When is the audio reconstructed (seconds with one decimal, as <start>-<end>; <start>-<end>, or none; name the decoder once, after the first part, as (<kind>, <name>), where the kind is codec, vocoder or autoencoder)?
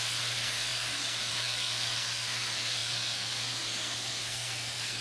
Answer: 0.0-5.0 (codec, SNAC)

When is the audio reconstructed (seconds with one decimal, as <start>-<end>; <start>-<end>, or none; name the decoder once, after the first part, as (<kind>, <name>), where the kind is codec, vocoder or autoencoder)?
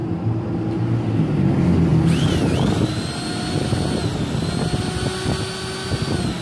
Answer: 0.0-0.9 (vocoder, BigVGAN v2); 1.9-2.7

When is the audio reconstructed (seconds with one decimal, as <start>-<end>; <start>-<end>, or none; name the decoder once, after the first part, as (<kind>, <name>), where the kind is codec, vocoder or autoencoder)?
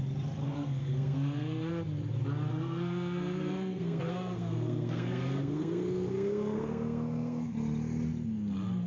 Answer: 0.4-1.7 (codec, SNAC); 2.5-7.5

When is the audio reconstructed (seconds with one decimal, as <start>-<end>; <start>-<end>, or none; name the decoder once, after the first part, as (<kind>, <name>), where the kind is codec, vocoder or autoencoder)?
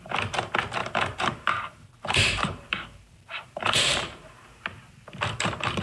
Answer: 0.8-4.3 (vocoder, BigVGAN v2)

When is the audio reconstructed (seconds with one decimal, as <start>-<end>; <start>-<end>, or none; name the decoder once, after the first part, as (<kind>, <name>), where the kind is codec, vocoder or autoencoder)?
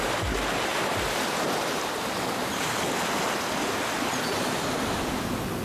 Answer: none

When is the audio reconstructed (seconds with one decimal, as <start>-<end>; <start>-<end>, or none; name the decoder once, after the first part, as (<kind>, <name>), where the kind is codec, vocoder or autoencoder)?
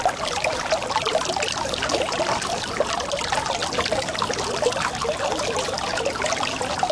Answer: none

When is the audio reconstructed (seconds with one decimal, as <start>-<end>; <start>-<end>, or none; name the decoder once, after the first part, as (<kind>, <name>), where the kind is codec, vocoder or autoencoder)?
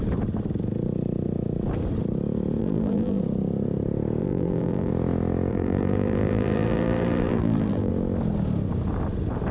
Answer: 2.6-3.2 (vocoder, BigVGAN v2); 4.2-4.9; 5.5-7.9